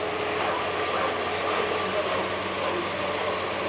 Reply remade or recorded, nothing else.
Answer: recorded